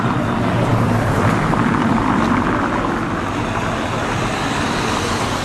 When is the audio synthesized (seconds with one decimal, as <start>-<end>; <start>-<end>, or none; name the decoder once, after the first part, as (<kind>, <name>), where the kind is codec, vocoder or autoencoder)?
0.7-3.7 (vocoder, BigVGAN v2)